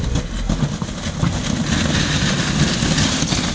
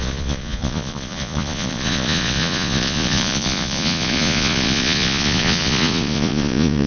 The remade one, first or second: second